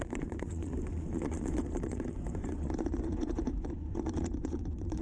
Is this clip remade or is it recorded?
remade